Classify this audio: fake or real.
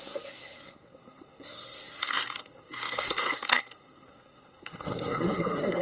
fake